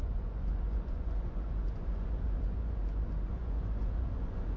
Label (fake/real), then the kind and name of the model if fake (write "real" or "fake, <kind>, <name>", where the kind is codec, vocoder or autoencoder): fake, vocoder, Vocos